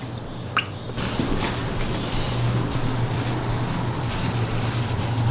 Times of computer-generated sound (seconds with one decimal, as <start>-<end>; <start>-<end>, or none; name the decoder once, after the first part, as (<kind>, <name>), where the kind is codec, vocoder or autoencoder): none